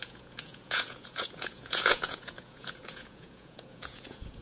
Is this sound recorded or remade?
remade